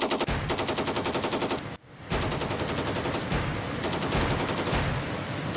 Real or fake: real